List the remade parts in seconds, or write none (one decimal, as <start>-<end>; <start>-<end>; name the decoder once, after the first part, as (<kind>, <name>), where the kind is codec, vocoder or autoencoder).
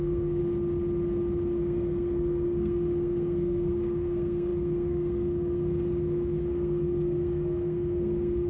0.0-0.4 (codec, SNAC); 1.6-8.5